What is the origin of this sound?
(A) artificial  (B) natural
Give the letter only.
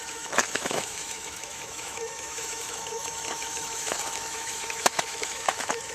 A